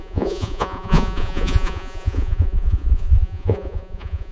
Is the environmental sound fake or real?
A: fake